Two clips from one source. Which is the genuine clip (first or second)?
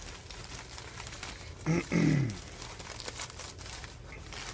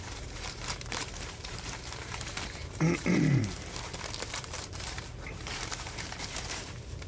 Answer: first